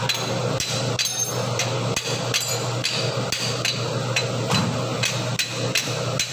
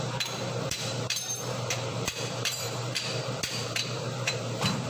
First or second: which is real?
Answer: first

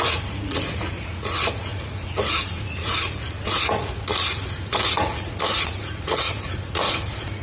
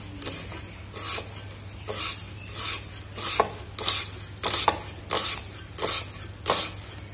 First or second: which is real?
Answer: second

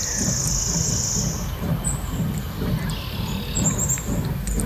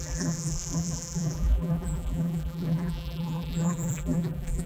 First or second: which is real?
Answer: first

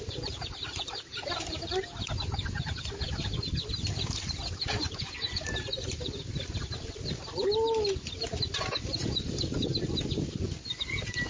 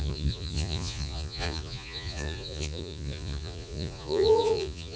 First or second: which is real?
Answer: first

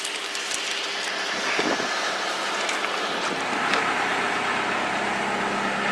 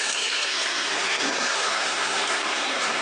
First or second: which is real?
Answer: first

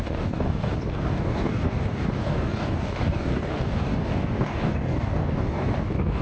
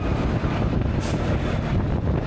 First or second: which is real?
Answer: second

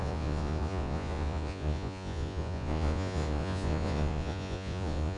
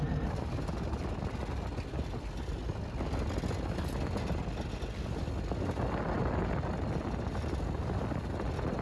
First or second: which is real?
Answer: second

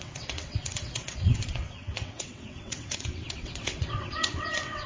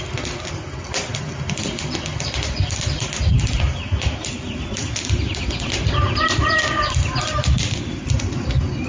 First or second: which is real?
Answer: second